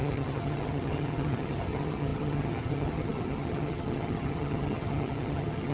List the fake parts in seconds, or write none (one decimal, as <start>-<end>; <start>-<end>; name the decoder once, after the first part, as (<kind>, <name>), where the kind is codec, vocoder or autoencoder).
0.0-5.7 (vocoder, HiFi-GAN)